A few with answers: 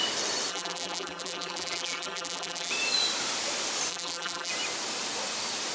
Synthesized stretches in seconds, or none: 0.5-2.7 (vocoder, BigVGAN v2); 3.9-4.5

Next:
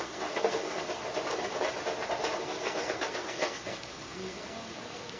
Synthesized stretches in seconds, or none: 0.0-1.0 (codec, SNAC); 2.4-5.2

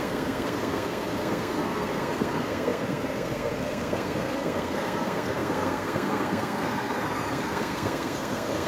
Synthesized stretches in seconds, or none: 0.0-8.7 (codec, SNAC)